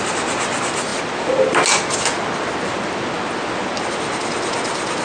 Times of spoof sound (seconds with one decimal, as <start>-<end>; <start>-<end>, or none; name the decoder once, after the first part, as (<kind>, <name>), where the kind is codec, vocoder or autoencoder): none